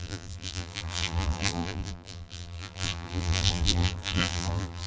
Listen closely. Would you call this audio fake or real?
fake